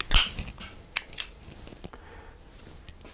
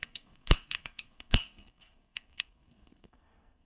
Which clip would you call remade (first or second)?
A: second